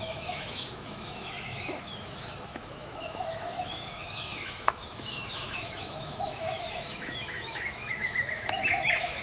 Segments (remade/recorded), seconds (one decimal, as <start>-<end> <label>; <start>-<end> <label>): 0.0-9.2 remade